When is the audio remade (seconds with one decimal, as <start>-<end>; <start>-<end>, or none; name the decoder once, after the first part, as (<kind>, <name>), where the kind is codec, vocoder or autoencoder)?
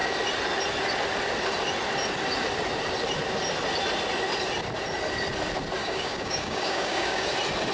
5.8-7.3 (codec, DAC)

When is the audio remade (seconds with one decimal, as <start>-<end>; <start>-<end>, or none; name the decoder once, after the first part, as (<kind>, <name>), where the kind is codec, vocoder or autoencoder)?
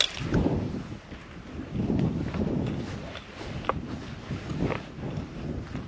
none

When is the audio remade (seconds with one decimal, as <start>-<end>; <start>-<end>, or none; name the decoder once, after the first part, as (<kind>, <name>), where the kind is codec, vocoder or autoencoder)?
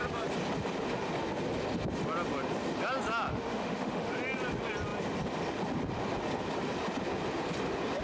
3.3-4.1 (autoencoder, DAC-VAE)